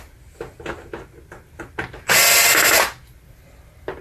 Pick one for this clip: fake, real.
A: real